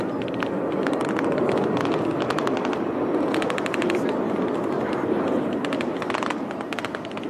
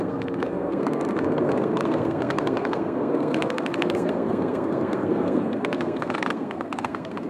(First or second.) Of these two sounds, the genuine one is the first